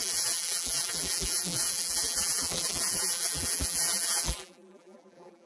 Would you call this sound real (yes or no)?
no